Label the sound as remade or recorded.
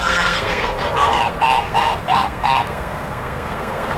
remade